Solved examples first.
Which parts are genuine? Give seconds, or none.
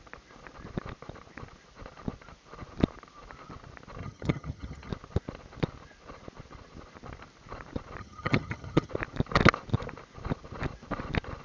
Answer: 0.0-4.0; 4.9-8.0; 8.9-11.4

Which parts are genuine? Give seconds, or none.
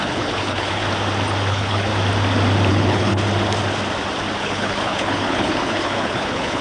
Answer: 0.8-1.5; 1.9-2.7; 3.1-4.4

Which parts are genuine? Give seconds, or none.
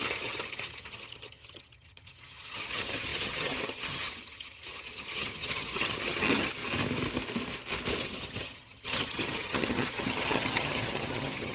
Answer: 6.6-8.0